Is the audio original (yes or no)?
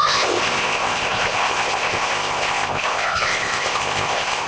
no